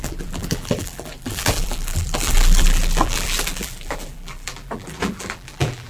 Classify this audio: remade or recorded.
remade